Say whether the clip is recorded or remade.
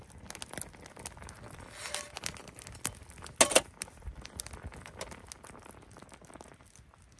recorded